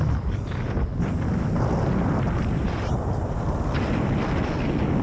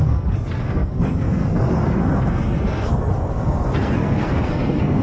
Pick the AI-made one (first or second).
second